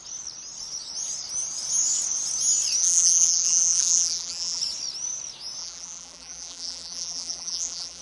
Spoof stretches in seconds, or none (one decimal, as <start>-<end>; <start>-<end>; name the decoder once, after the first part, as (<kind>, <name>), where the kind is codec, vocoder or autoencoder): 2.8-4.6 (vocoder, BigVGAN v2); 5.6-8.0